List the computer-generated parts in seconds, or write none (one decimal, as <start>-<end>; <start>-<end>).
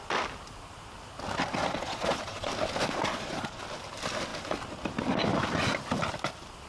1.6-2.5; 3.1-3.6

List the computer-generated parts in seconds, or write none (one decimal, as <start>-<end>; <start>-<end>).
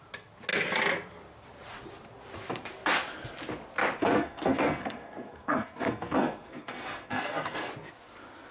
4.0-7.7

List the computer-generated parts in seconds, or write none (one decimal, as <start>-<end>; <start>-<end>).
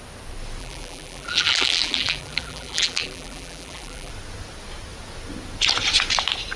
0.6-4.1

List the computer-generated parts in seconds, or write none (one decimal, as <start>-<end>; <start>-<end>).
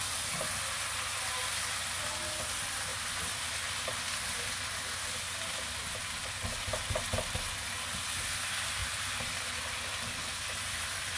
none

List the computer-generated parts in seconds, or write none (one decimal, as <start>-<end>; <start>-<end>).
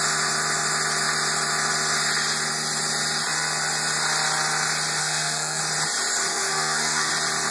5.0-5.6; 6.3-7.1